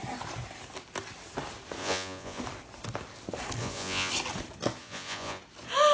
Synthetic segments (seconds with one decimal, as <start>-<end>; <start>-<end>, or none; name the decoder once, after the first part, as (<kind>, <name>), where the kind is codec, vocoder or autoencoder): 1.8-2.4 (vocoder, Vocos); 3.6-4.1; 4.8-5.4